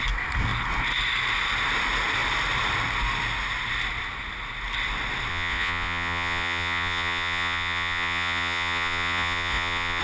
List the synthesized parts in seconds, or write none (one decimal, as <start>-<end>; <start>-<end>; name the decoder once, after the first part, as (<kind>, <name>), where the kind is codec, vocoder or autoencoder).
5.3-10.0 (vocoder, Vocos)